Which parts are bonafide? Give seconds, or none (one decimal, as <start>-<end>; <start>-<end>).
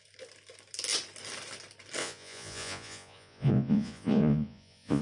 0.0-2.0